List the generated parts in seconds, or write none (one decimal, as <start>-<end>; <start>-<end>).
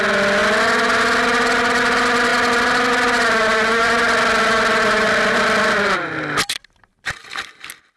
none